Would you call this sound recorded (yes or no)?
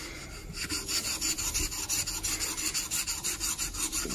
yes